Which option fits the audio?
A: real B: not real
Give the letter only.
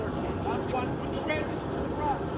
A